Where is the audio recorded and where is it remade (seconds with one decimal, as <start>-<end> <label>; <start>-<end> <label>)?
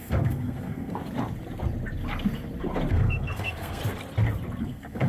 0.0-1.0 remade; 1.0-2.9 recorded; 2.9-3.8 remade; 3.8-4.6 recorded; 4.6-5.1 remade